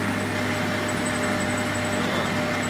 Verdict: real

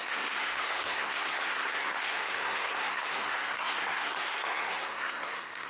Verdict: fake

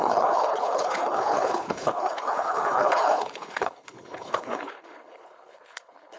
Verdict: fake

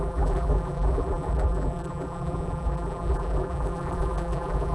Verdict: fake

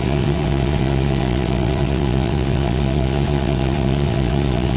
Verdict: fake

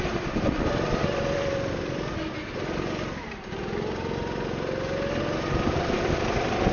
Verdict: real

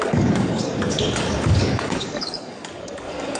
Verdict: fake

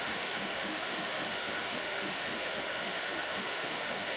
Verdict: fake